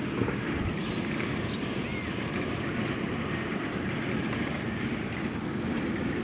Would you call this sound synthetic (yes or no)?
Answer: no